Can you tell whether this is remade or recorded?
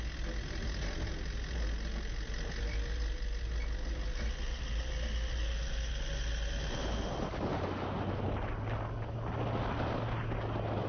recorded